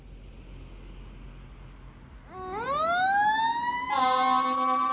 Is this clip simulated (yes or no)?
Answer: no